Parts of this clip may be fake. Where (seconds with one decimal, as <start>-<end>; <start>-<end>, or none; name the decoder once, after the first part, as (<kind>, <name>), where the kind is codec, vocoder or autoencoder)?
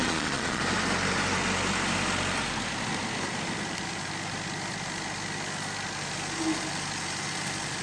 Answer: 0.0-0.6 (vocoder, Vocos)